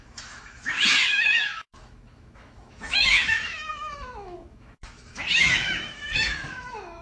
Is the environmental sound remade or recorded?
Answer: remade